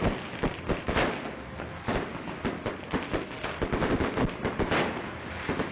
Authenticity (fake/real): real